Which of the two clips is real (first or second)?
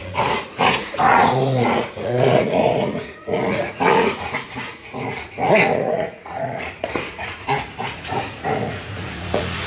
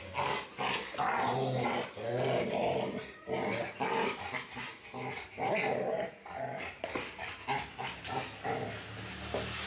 second